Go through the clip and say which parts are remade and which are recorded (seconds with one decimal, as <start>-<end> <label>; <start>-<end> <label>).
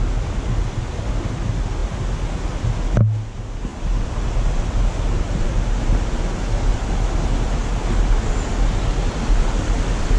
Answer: 0.0-10.2 recorded